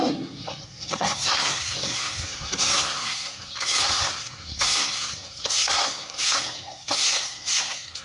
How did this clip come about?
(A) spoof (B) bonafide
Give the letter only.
A